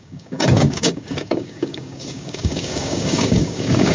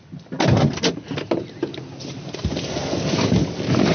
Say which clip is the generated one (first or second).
first